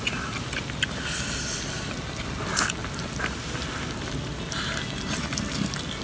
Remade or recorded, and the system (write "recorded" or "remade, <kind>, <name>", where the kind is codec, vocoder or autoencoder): recorded